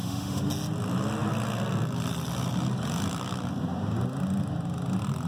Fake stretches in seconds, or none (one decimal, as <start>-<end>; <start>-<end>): 0.0-0.5